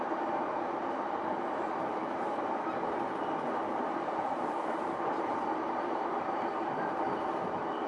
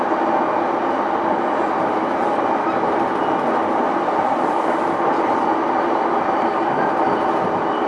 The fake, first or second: first